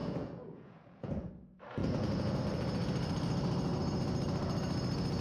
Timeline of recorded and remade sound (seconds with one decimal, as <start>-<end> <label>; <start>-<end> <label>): 0.0-1.3 remade; 1.3-1.8 recorded; 1.8-2.4 remade; 2.4-5.2 recorded